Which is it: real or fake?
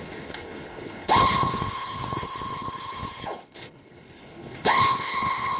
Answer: fake